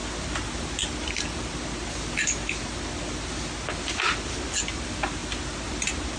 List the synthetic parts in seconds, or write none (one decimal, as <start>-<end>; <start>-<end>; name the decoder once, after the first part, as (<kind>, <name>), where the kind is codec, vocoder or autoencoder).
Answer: none